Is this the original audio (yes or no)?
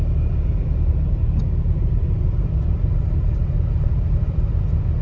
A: no